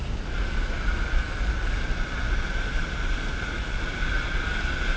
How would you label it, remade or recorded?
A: recorded